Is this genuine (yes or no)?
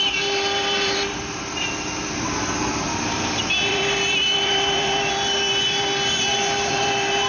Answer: no